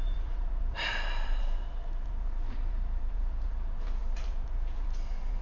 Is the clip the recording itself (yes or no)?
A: no